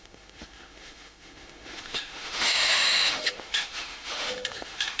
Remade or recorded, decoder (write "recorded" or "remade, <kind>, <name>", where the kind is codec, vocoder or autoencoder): remade, autoencoder, DAC-VAE